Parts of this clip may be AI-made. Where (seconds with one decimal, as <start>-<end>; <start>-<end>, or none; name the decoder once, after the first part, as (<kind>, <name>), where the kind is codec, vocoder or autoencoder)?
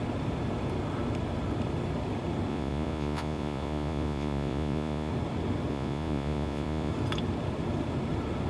2.5-5.1 (vocoder, Vocos); 5.7-6.9